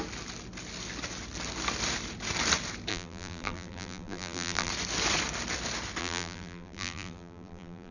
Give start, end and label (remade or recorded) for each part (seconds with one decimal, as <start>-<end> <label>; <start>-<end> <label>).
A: 0.0-2.9 recorded; 2.9-4.7 remade; 4.7-6.0 recorded; 6.0-7.9 remade